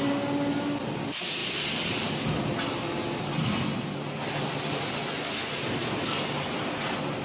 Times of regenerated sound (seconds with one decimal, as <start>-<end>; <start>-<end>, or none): none